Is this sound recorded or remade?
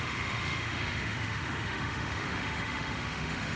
remade